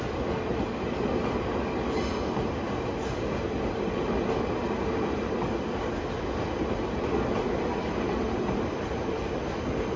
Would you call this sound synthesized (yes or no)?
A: no